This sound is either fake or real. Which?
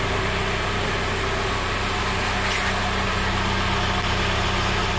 real